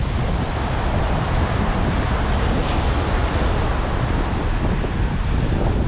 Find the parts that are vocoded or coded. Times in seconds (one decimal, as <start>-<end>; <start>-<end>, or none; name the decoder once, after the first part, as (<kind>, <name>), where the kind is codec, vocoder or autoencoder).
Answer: 0.0-2.1 (vocoder, BigVGAN v2); 3.2-5.9